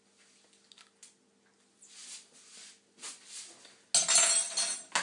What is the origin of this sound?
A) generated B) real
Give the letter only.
B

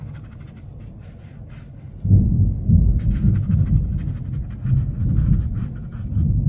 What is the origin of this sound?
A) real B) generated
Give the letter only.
A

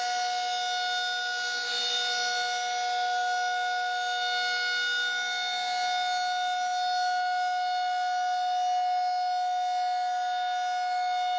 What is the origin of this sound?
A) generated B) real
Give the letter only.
B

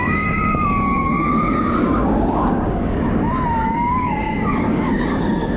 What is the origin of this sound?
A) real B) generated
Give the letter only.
B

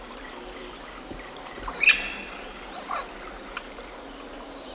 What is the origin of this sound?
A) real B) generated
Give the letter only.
A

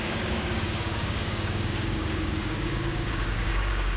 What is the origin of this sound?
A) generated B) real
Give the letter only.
A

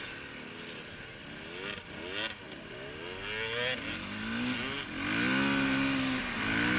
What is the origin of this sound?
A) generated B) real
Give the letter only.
B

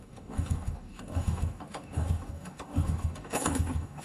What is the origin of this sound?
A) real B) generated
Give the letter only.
B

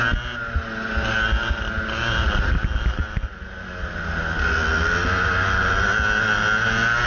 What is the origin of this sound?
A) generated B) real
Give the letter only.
B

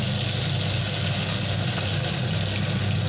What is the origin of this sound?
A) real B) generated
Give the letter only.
A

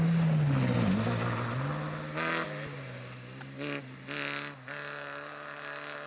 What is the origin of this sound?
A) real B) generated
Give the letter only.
A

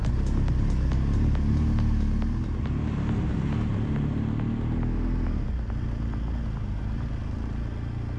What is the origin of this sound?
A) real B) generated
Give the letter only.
A